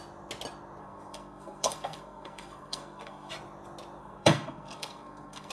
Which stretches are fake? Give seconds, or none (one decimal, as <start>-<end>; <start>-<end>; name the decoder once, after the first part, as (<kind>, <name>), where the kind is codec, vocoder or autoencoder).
0.8-3.3 (codec, SNAC); 4.0-5.5